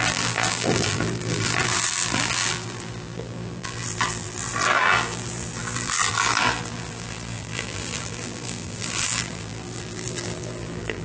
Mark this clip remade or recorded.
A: remade